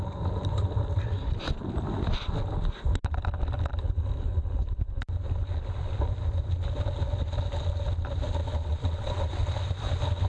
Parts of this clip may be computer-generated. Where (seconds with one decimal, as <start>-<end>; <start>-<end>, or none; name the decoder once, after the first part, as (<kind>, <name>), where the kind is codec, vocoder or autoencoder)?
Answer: 8.4-9.3 (vocoder, WaveNeXt)